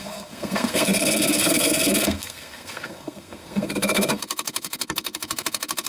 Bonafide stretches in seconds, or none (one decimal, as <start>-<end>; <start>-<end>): none